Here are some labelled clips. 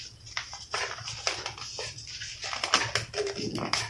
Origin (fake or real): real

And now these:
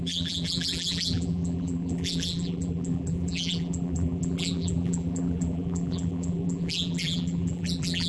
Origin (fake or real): fake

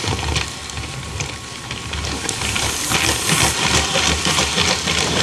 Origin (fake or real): real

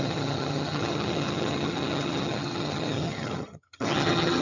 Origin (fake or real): fake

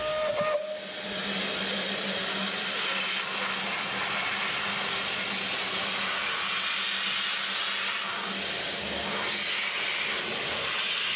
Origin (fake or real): real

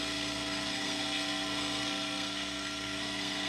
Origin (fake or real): fake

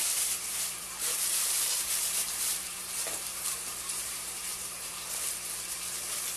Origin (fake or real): fake